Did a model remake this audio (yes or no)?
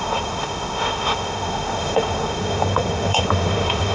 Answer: yes